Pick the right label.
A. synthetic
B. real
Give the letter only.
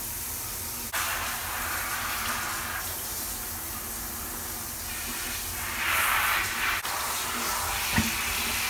B